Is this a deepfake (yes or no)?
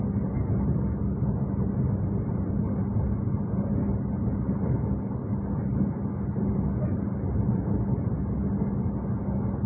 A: no